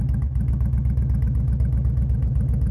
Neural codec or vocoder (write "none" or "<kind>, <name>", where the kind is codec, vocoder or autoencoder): autoencoder, DAC-VAE